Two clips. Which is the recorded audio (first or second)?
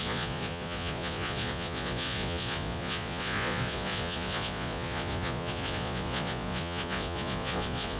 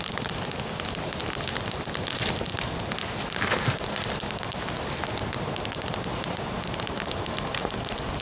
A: second